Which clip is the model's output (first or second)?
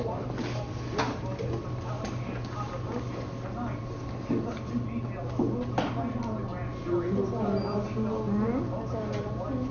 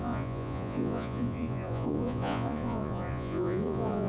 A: second